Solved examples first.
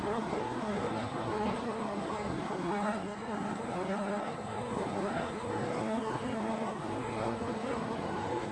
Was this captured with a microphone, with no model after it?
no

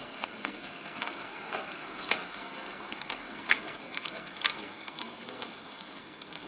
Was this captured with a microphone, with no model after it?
no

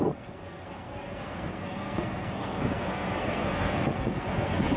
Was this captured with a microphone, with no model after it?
no